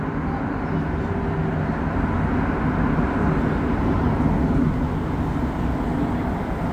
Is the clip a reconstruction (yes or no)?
no